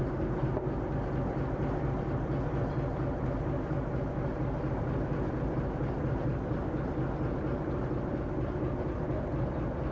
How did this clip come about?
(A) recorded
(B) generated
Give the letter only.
A